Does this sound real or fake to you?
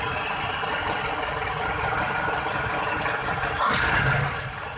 real